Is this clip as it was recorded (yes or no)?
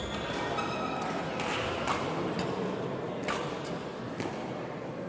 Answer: yes